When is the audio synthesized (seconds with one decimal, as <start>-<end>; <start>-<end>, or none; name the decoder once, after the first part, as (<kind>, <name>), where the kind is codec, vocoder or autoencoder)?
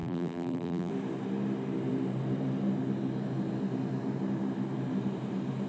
0.0-0.9 (vocoder, BigVGAN v2)